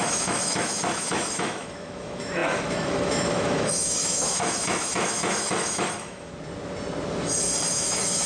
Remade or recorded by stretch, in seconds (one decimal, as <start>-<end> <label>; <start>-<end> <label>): 0.0-6.3 remade; 6.3-7.7 recorded; 7.7-8.3 remade